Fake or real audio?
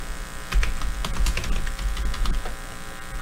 real